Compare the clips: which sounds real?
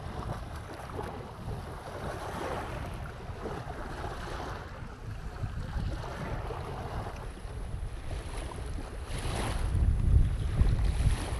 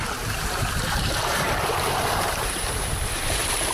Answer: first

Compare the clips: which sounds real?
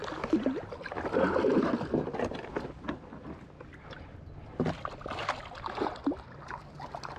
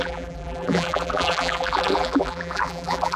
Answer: first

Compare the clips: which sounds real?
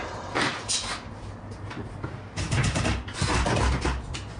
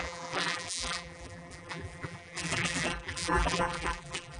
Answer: first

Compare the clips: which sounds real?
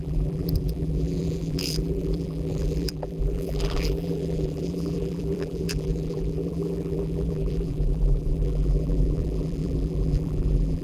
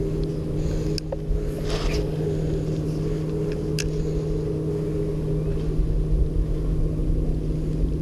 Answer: second